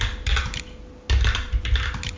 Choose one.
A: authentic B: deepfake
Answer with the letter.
A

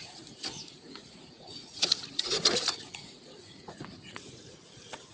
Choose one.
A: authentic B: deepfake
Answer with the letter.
B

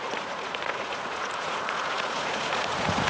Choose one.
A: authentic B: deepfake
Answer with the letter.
B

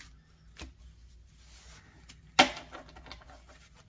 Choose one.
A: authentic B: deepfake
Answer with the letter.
A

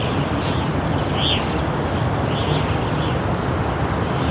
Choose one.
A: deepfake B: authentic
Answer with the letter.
A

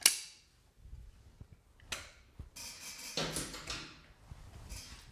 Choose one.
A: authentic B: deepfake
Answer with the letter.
A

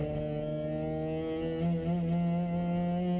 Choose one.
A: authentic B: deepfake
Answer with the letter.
A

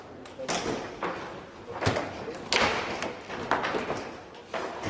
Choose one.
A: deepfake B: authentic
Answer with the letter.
B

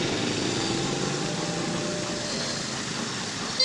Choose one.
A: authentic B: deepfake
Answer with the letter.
A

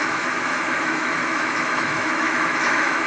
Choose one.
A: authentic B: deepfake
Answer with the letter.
B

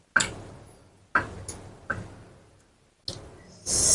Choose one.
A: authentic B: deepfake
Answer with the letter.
A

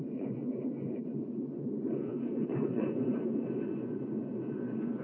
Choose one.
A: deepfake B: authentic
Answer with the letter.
A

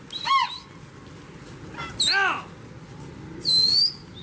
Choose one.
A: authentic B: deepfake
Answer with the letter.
A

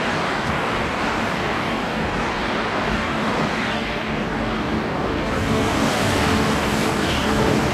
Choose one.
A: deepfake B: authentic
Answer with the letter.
A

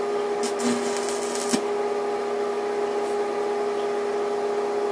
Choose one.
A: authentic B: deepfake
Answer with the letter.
A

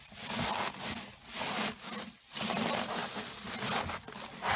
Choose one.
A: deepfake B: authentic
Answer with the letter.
B